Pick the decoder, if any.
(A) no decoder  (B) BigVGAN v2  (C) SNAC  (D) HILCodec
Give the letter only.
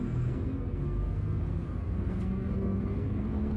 C